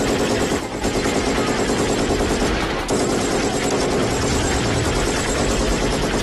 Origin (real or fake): real